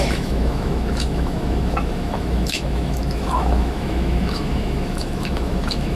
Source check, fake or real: fake